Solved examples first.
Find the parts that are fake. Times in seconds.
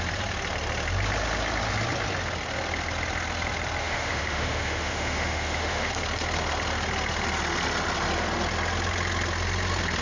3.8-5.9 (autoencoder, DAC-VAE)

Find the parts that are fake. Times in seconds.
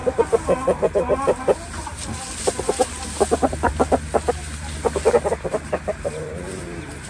none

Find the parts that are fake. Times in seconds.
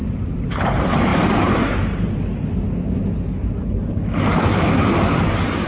none